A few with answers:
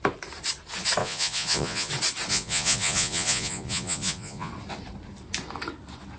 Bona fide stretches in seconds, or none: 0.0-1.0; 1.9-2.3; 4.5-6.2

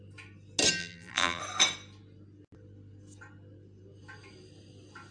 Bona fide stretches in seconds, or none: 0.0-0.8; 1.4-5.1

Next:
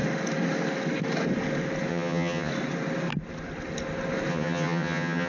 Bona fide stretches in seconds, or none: 0.0-1.9; 2.5-4.3

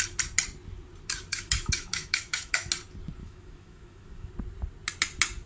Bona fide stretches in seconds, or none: 0.0-1.3; 2.7-3.2; 4.3-5.5

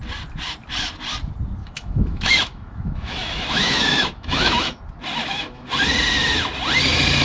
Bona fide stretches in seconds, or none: 0.0-1.6; 4.8-5.2; 5.7-7.2

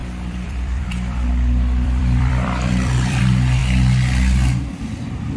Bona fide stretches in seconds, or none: 3.2-5.4

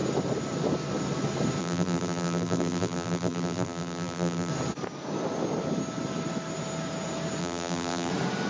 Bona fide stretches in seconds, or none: 0.0-1.6; 4.5-7.4; 8.1-8.5